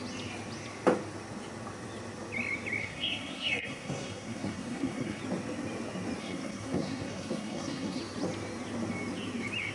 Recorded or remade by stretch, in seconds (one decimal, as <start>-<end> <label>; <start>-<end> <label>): 0.0-2.8 recorded; 2.8-5.2 remade; 5.2-6.2 recorded; 6.2-8.0 remade; 8.0-9.7 recorded